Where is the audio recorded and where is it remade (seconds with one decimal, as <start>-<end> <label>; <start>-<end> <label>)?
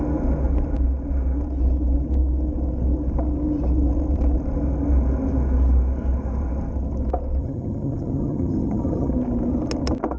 0.0-7.4 recorded; 7.4-9.1 remade; 9.1-10.2 recorded